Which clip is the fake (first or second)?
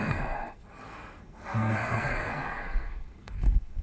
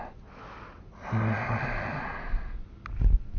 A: first